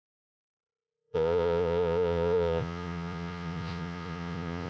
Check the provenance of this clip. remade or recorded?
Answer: remade